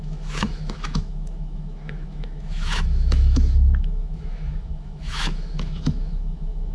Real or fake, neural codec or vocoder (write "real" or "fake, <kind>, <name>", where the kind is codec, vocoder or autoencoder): fake, autoencoder, DAC-VAE